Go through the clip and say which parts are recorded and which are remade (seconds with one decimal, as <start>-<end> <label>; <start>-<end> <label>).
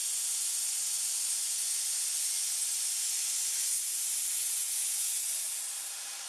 0.0-3.8 remade; 3.8-4.4 recorded; 4.4-5.5 remade; 5.5-6.3 recorded